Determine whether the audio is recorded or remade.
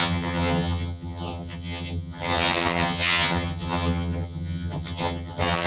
remade